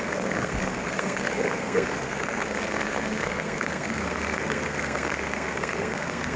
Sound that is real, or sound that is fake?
fake